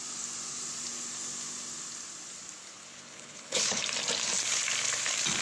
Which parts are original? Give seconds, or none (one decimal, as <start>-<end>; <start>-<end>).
0.0-2.6; 3.8-5.4